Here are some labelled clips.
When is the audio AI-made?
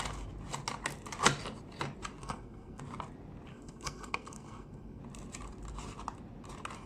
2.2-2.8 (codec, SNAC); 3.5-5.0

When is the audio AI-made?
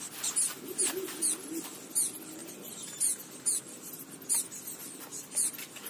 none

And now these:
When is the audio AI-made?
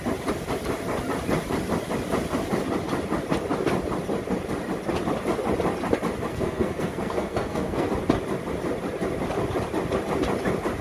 6.3-7.9 (codec, SNAC)